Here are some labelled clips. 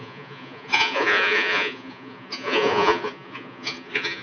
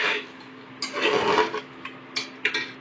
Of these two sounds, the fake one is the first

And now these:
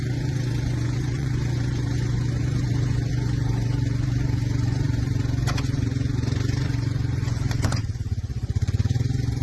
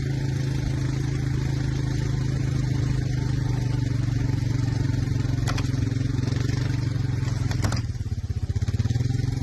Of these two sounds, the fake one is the first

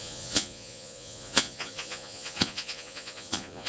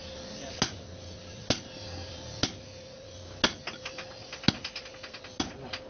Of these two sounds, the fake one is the first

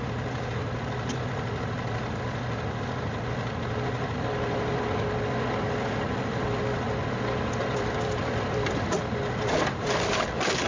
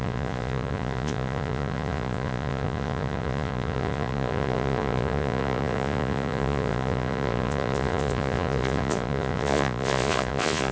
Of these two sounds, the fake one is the second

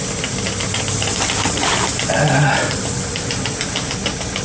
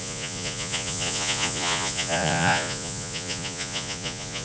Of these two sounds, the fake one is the second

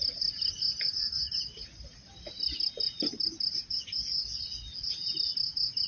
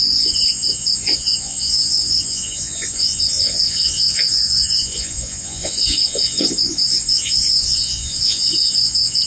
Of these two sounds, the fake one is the second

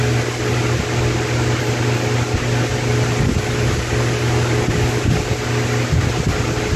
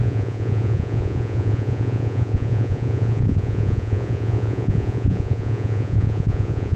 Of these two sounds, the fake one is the second